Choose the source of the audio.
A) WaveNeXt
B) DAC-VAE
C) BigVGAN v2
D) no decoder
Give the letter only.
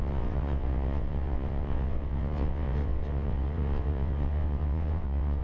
A